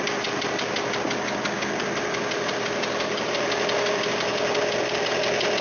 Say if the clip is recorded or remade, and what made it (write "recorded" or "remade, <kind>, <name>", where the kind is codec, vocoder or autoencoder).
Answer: recorded